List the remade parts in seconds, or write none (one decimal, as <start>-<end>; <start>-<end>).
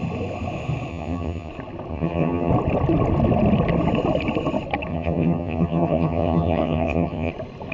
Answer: 0.9-1.5; 1.9-2.5; 4.9-7.3